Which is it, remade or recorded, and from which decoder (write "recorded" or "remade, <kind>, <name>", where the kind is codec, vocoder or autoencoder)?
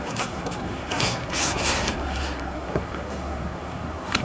remade, codec, SNAC